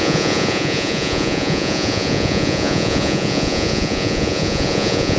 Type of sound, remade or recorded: remade